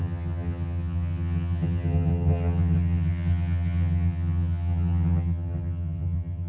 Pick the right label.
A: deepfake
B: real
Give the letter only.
A